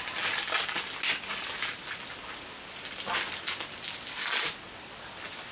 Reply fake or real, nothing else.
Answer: real